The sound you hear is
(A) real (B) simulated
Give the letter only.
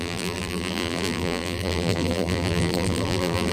B